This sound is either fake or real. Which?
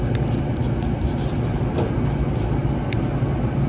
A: real